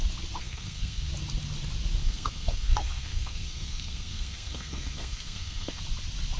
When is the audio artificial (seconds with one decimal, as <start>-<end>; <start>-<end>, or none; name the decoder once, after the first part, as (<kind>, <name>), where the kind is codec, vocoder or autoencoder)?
0.4-1.1 (codec, SNAC); 2.0-5.8